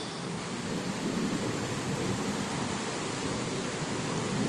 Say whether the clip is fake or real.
real